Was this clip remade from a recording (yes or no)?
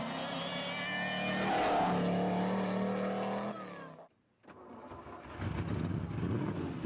no